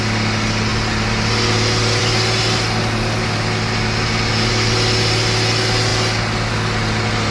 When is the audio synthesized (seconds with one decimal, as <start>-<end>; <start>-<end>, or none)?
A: none